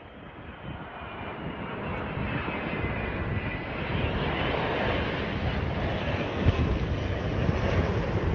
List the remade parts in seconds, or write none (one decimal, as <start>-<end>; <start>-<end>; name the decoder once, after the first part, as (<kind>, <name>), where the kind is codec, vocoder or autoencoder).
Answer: 6.0-6.9 (codec, SNAC)

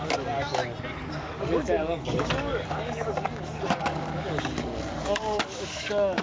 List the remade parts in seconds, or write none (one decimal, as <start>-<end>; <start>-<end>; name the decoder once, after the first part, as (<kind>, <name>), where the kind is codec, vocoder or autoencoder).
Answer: 0.0-0.6 (codec, DAC); 1.1-6.2

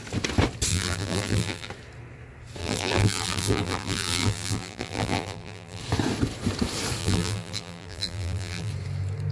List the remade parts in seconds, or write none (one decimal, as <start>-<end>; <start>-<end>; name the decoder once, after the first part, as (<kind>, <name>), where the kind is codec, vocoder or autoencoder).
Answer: 0.7-1.7 (vocoder, BigVGAN v2); 2.6-5.8; 7.0-8.7

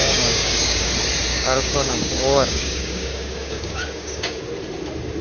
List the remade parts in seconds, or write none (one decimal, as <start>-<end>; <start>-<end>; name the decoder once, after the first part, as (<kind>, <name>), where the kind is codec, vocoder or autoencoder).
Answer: 0.0-0.9 (codec, DAC); 1.3-4.4

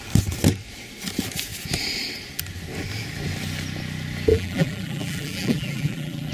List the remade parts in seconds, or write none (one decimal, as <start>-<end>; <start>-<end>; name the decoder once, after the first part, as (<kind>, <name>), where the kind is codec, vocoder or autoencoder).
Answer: 4.3-6.3 (vocoder, BigVGAN v2)

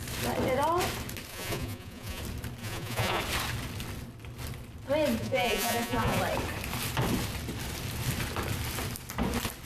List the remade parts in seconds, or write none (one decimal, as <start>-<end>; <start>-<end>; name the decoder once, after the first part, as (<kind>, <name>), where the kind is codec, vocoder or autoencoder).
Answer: 1.3-2.2 (vocoder, Vocos); 2.6-3.2; 5.2-6.2

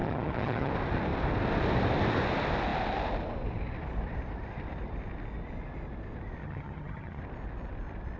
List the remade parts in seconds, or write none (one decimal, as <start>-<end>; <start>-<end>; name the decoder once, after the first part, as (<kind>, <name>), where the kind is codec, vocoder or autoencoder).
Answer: 0.0-0.7 (vocoder, HiFi-GAN); 6.4-7.2